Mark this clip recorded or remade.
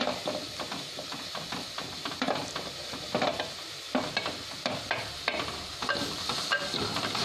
recorded